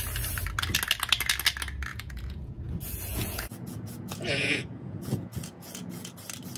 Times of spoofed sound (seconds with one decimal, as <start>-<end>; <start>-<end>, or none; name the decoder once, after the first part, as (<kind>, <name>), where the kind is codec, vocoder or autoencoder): 1.9-2.7 (vocoder, Vocos); 3.1-6.1